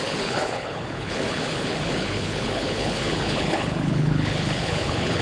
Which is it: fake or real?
fake